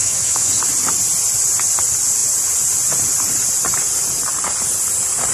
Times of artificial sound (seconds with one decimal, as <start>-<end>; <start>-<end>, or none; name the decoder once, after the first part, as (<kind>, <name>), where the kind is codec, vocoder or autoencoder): 0.0-0.5 (autoencoder, DAC-VAE)

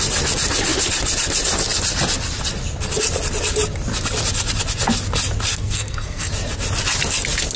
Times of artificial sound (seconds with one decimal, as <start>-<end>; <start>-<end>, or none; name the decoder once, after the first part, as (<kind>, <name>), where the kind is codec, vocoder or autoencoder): 5.5-6.3 (codec, SNAC)

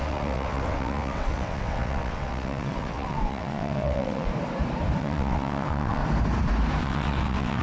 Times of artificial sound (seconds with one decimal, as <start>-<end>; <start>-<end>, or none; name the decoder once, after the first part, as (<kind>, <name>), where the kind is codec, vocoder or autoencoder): 0.0-4.3 (vocoder, WaveNeXt); 5.0-6.0; 6.8-7.6

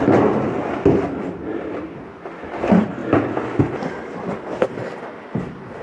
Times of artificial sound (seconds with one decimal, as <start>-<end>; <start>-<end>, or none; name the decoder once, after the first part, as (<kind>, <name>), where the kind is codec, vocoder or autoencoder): none

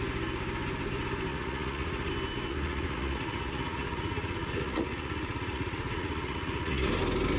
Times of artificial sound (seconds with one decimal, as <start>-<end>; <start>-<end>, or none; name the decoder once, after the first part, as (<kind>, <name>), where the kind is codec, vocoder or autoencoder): 1.3-2.1 (vocoder, Vocos); 2.5-6.9

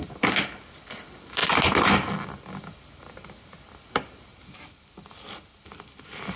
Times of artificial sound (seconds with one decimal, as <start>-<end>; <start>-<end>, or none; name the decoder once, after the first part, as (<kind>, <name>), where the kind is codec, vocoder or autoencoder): none

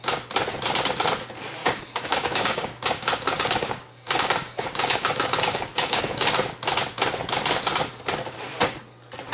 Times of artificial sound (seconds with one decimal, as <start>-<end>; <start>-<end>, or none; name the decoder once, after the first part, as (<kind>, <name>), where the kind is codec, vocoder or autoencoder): 1.6-6.3 (codec, DAC)

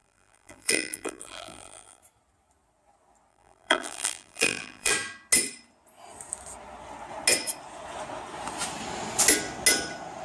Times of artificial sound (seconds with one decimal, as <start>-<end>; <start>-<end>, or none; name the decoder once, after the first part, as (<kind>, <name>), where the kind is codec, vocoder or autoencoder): 0.0-2.0 (vocoder, BigVGAN v2); 3.3-4.9